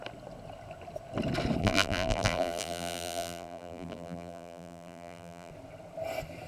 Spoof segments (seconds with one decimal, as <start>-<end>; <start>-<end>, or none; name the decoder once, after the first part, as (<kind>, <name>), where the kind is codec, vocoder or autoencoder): 1.6-5.5 (vocoder, BigVGAN v2)